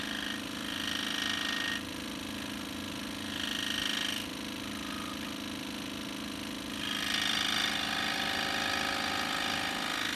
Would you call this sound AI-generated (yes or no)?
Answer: no